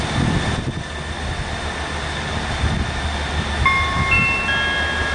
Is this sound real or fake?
real